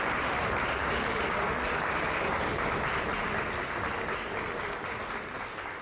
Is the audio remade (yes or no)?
no